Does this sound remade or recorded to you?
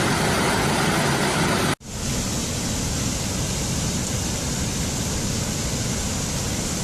recorded